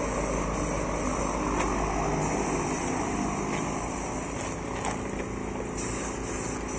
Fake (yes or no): no